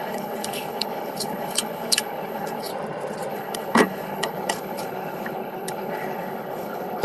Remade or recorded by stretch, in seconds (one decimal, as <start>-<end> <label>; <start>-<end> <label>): 0.0-2.7 remade; 2.7-3.3 recorded; 3.3-7.0 remade